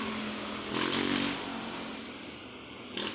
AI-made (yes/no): no